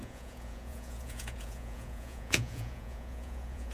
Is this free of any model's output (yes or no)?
no